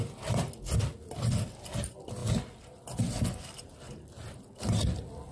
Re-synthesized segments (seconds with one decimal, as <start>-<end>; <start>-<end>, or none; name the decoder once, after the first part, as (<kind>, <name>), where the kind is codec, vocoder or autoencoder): none